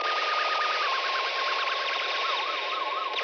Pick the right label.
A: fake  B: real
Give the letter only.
A